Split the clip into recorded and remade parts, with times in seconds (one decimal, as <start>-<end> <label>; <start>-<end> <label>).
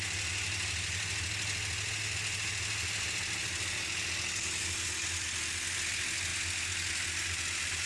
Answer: 0.0-7.9 recorded